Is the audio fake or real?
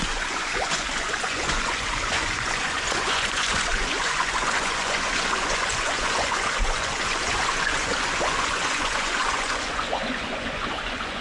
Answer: fake